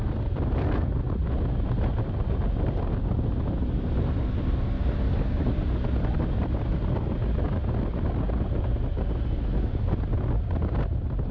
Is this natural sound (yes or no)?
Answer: yes